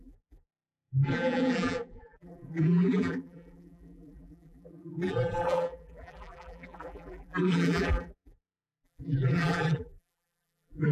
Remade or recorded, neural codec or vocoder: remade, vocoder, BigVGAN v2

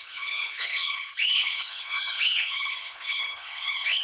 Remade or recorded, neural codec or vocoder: remade, codec, HILCodec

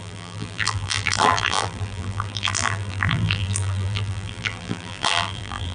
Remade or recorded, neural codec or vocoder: remade, vocoder, BigVGAN v2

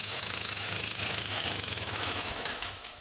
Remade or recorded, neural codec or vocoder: remade, autoencoder, DAC-VAE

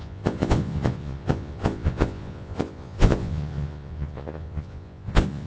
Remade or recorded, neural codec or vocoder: remade, vocoder, Vocos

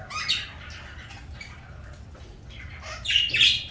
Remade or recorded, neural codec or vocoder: recorded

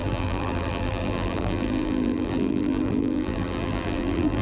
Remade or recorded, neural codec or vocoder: remade, vocoder, BigVGAN v2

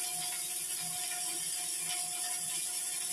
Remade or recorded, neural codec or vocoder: recorded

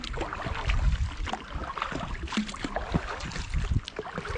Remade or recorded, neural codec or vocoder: recorded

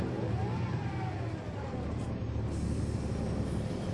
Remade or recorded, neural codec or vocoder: recorded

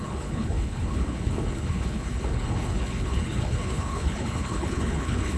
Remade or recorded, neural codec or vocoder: remade, codec, HILCodec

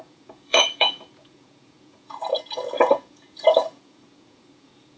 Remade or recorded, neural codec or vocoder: remade, vocoder, Vocos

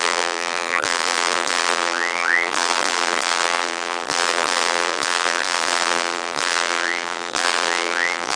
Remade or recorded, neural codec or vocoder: remade, vocoder, BigVGAN v2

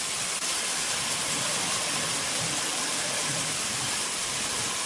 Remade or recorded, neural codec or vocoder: recorded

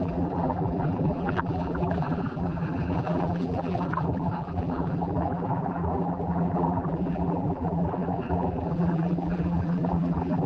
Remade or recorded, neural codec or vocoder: remade, vocoder, BigVGAN v2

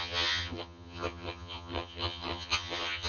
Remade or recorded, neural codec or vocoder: remade, vocoder, HiFi-GAN